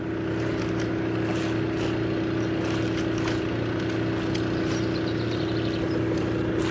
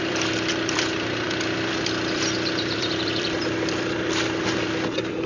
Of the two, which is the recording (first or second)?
first